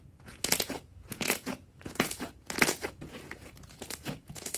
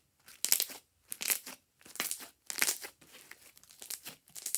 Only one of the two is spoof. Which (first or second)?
first